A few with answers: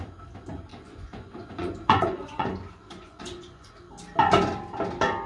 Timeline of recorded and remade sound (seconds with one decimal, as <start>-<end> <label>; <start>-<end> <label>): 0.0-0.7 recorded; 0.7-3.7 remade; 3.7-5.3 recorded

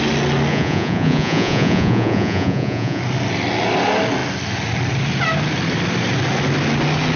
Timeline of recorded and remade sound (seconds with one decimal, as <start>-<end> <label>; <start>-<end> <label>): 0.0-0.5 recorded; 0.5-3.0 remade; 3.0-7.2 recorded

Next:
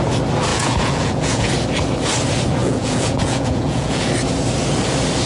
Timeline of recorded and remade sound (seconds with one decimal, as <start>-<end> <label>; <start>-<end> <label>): 0.0-0.5 recorded; 0.5-1.5 remade; 1.5-2.6 recorded; 2.6-4.1 remade; 4.1-5.3 recorded